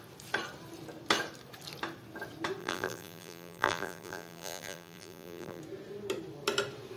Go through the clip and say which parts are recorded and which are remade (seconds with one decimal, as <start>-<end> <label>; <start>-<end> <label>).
0.0-2.6 recorded; 2.6-5.6 remade; 5.6-7.0 recorded